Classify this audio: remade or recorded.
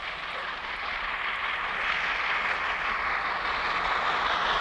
recorded